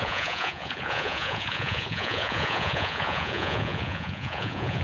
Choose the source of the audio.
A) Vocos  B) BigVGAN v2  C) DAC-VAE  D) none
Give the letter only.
A